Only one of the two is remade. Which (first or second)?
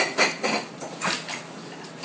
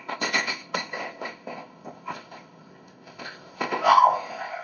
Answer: second